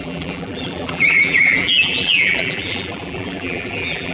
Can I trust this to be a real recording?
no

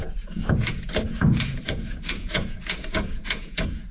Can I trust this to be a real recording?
no